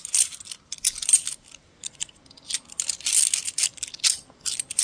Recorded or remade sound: recorded